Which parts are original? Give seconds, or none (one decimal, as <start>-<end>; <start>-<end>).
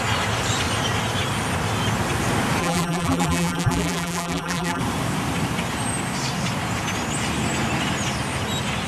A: 0.0-2.6; 4.8-8.9